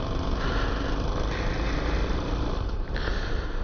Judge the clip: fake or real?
real